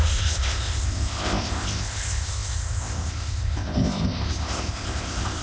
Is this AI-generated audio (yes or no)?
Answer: yes